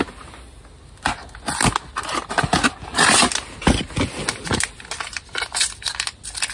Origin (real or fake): real